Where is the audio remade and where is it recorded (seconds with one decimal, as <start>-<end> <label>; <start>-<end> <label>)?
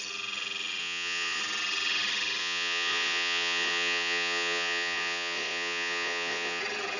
0.0-0.8 recorded; 0.8-1.4 remade; 1.4-2.4 recorded; 2.4-6.6 remade; 6.6-7.0 recorded